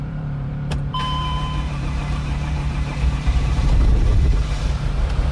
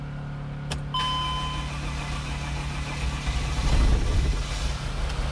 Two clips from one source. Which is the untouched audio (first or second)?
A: second